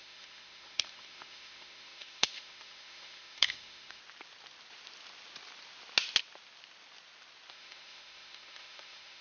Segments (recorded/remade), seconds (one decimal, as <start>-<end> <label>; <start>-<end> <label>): 0.0-4.0 remade; 4.0-7.5 recorded; 7.5-9.2 remade